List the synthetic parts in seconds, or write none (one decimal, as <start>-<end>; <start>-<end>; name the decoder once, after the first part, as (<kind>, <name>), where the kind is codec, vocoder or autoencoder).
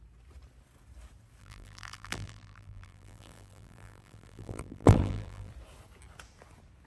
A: 1.4-5.5 (vocoder, BigVGAN v2)